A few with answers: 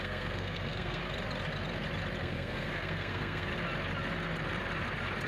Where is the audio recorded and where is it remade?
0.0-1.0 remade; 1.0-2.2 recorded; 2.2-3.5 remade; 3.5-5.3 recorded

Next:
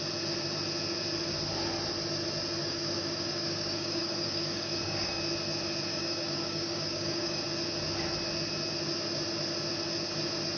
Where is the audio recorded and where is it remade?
0.0-2.6 recorded; 2.6-5.2 remade; 5.2-5.9 recorded; 5.9-7.4 remade; 7.4-10.6 recorded

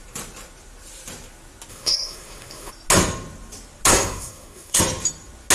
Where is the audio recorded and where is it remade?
0.0-1.7 recorded; 1.7-2.7 remade; 2.7-3.9 recorded; 3.9-4.8 remade; 4.8-5.5 recorded

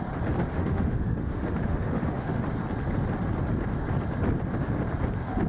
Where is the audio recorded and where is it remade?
0.0-0.5 recorded; 0.5-2.4 remade; 2.4-5.5 recorded

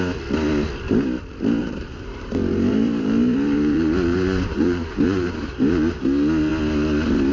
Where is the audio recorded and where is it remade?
0.0-1.6 recorded; 1.6-6.0 remade; 6.0-7.3 recorded

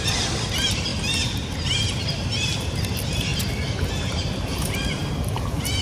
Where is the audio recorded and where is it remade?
0.0-0.9 remade; 0.9-2.0 recorded; 2.0-3.3 remade; 3.3-3.9 recorded; 3.9-5.8 remade

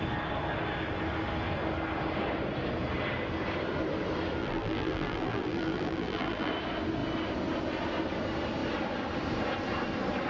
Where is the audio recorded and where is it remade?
0.0-4.4 recorded; 4.4-6.5 remade; 6.5-10.3 recorded